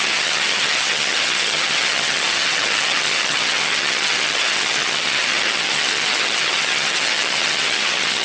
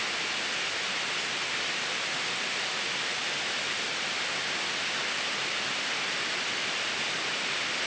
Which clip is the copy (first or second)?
first